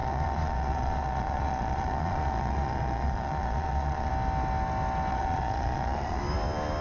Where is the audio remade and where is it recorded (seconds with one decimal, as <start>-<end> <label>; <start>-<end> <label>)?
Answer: 0.0-4.1 remade; 4.1-5.1 recorded; 5.1-6.2 remade; 6.2-6.8 recorded